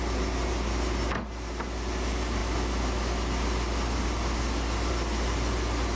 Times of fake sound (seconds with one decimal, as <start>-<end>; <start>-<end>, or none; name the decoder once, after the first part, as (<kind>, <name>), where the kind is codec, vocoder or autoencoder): none